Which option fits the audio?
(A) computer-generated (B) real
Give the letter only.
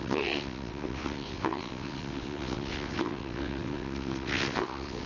A